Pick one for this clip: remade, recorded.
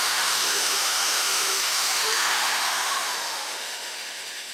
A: remade